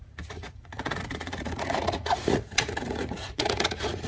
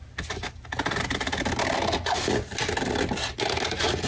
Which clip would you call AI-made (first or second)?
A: first